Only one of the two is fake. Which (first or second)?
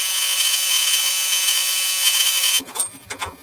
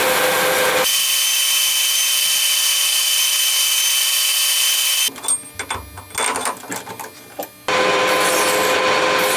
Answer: first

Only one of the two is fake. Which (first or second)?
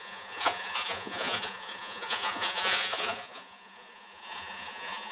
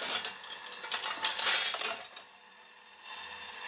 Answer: first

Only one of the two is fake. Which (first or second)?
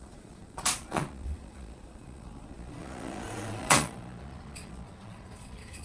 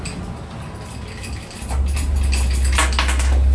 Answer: first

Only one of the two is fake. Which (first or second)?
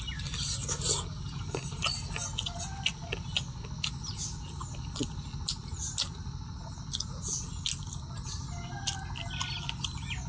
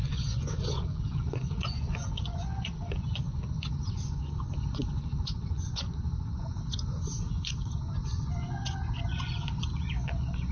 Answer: second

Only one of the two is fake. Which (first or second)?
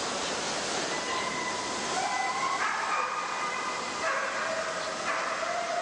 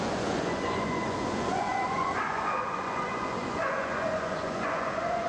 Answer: second